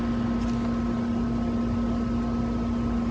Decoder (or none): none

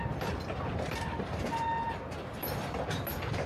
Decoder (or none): none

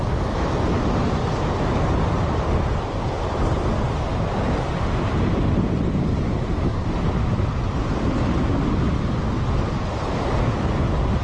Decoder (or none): none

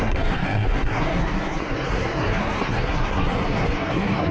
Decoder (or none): codec, SNAC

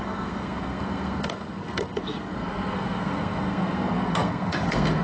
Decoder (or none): codec, SNAC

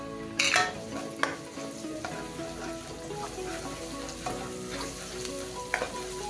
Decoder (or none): none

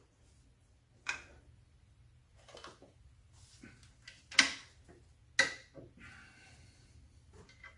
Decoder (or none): none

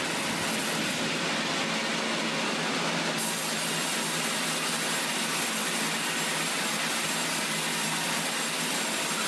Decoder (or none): none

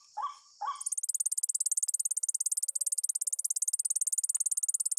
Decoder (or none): none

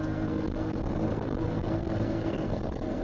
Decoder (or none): codec, SNAC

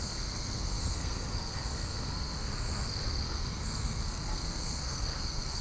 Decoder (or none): codec, SNAC